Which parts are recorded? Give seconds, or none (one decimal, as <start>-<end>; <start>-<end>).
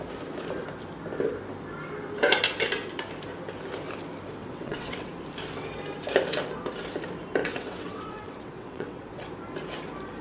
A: 0.0-4.4; 5.1-7.4; 9.3-10.2